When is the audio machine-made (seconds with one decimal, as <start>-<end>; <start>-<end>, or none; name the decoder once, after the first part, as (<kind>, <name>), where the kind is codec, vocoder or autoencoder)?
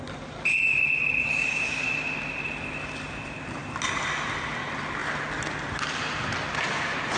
0.0-3.6 (vocoder, BigVGAN v2); 4.4-5.0; 6.5-7.2